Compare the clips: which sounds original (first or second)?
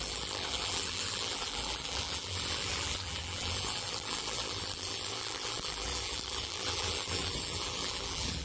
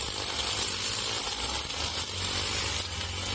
second